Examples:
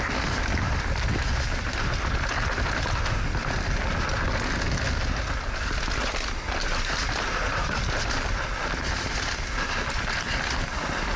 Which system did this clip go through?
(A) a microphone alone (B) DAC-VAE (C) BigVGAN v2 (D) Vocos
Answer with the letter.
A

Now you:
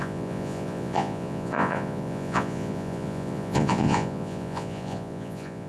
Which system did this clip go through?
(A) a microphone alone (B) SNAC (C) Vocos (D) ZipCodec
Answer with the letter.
C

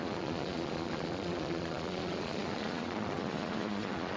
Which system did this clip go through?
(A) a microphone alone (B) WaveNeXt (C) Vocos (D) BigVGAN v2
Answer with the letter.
C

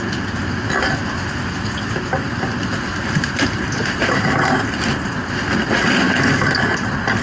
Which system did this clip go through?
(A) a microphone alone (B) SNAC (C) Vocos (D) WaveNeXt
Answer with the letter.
A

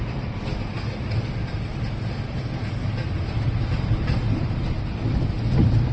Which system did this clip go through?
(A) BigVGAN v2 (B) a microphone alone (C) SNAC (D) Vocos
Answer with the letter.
B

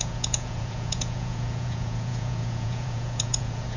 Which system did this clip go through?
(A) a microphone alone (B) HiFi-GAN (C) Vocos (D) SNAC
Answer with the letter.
C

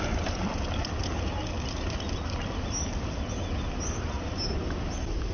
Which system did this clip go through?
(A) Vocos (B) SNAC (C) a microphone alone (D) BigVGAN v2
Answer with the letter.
C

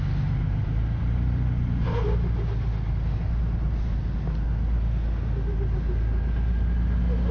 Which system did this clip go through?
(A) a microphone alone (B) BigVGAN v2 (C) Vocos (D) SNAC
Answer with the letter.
A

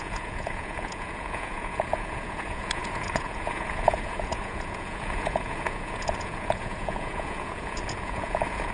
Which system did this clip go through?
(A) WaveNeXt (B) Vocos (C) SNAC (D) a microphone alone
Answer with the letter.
B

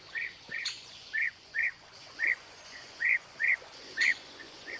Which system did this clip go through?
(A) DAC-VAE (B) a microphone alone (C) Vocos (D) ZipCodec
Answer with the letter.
C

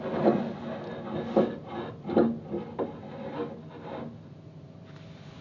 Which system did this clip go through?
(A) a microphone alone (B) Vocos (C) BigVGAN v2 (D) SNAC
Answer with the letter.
A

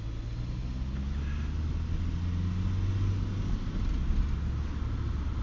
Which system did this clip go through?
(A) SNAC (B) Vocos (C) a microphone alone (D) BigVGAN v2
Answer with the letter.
C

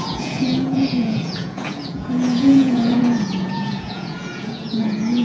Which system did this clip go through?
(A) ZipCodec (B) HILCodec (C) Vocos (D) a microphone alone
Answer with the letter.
C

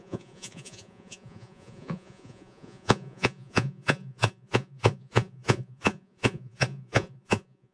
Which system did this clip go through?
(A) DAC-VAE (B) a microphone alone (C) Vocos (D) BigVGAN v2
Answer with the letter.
C